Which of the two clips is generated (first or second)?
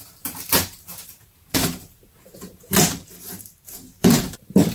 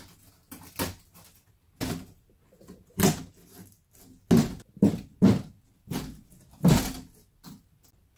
first